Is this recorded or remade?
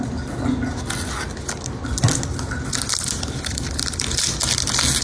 recorded